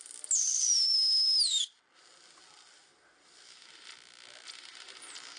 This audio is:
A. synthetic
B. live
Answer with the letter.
B